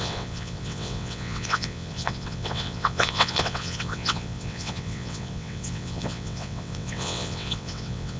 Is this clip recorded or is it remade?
remade